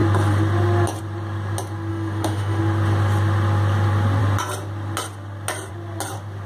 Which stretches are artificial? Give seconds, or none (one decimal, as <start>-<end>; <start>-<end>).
1.9-2.6